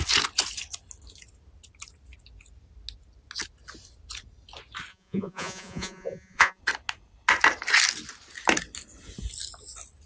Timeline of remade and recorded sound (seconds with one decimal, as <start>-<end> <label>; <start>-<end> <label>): 0.0-4.9 recorded; 4.9-6.6 remade; 6.6-10.1 recorded